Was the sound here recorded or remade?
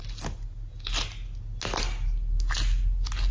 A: recorded